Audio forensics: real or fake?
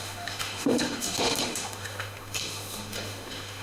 fake